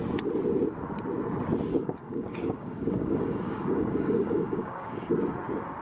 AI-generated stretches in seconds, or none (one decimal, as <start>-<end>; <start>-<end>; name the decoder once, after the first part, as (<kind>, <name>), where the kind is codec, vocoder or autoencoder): 1.7-5.1 (codec, DAC)